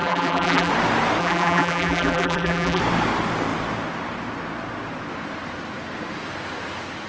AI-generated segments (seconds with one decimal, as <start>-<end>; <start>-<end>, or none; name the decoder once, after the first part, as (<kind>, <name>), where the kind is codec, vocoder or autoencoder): 0.0-0.7 (vocoder, BigVGAN v2); 1.2-2.8